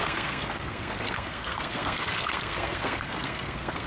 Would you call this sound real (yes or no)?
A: no